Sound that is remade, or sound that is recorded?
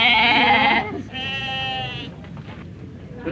recorded